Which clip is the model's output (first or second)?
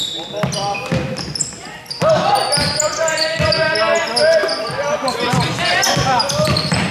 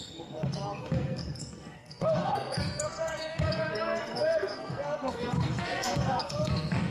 second